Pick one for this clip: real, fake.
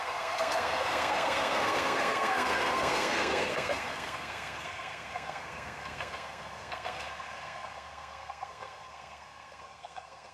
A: fake